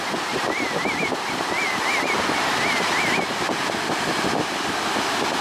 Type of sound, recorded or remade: remade